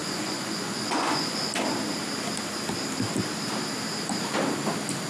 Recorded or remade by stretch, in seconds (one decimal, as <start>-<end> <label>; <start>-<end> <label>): 0.0-1.4 remade; 1.4-5.1 recorded